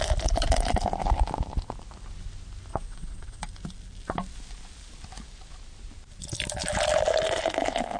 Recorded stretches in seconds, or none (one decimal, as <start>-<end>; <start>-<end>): 0.0-2.7; 3.5-8.0